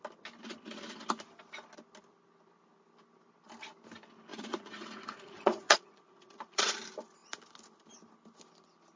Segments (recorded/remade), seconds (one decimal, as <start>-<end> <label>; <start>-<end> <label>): 0.0-4.3 recorded; 4.3-6.7 remade; 6.7-9.0 recorded